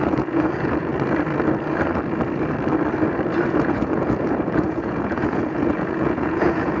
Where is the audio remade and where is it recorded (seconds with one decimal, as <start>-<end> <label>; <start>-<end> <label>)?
0.0-0.9 remade; 0.9-3.5 recorded; 3.5-6.8 remade